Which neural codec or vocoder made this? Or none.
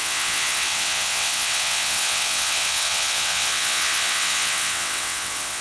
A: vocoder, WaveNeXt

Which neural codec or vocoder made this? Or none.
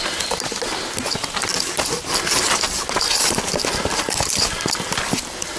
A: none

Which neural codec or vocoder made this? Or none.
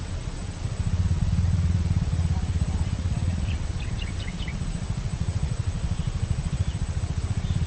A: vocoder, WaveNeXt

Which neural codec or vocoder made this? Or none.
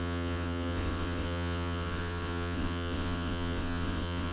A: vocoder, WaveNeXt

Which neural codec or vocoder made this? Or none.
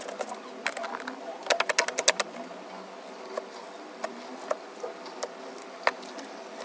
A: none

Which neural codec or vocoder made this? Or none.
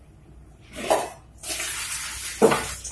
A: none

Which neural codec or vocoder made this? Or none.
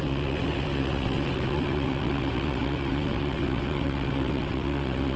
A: vocoder, WaveNeXt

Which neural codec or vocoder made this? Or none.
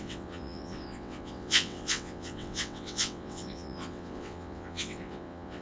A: vocoder, WaveNeXt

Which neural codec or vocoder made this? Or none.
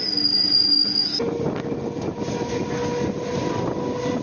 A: none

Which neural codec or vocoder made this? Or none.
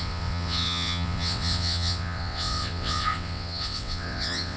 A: vocoder, WaveNeXt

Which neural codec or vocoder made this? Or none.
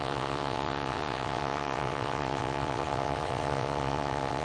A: vocoder, WaveNeXt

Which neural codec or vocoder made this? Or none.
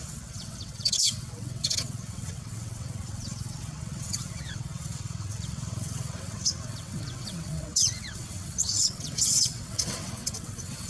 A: vocoder, WaveNeXt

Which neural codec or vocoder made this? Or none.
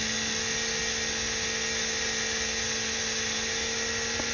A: none